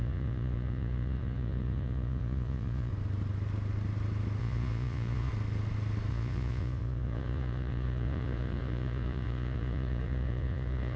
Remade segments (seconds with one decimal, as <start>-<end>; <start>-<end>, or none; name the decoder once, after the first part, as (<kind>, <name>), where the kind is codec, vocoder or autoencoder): 0.0-2.9 (vocoder, Vocos); 4.4-5.3; 6.1-11.0